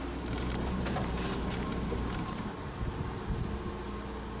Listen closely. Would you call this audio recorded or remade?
remade